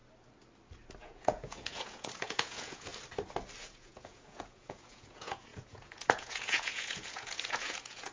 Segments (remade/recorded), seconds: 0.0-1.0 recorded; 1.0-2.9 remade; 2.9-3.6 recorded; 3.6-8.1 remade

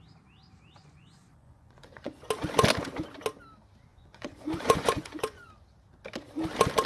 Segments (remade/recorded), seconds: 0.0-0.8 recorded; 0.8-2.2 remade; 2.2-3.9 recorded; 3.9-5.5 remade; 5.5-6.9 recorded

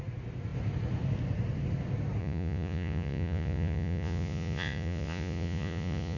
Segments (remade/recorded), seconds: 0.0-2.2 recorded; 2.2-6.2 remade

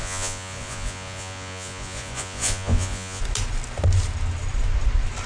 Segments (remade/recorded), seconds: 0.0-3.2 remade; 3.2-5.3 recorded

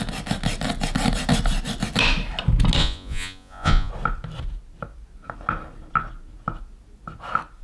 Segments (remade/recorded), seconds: 0.0-2.8 recorded; 2.8-3.9 remade; 3.9-7.6 recorded

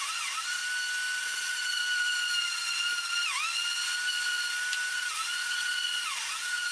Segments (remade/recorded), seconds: 0.0-0.6 remade; 0.6-1.2 recorded; 1.2-1.8 remade; 1.8-4.9 recorded; 4.9-6.7 remade

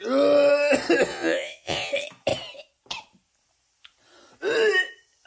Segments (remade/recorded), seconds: 0.0-1.1 recorded; 1.1-1.9 remade; 1.9-5.3 recorded

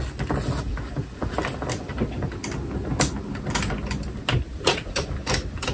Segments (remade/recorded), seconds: 0.0-4.5 recorded; 4.5-5.1 remade; 5.1-5.7 recorded